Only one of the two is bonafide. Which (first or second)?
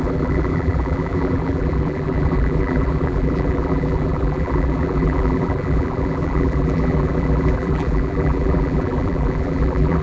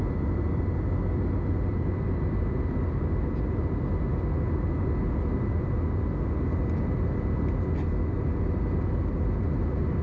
second